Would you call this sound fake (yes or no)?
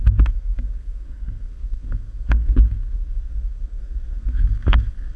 yes